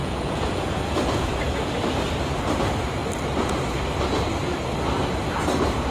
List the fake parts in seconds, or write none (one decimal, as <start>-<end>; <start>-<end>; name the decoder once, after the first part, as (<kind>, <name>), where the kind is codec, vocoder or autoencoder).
0.0-1.3 (vocoder, Vocos)